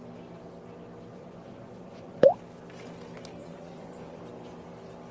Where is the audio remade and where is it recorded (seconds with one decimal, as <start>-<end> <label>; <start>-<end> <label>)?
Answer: 0.0-1.1 recorded; 1.1-2.4 remade; 2.4-3.4 recorded; 3.4-4.2 remade; 4.2-5.1 recorded